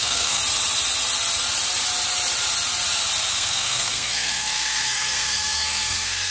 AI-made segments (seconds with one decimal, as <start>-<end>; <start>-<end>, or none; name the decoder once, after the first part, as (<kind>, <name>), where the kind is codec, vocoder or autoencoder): 0.0-0.4 (codec, SNAC); 3.3-6.3